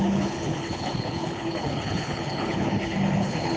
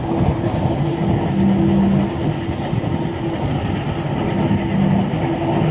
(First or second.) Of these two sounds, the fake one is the first